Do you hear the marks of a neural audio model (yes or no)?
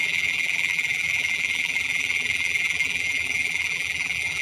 yes